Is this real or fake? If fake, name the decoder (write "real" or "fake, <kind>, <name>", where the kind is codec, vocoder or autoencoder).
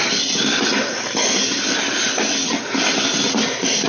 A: real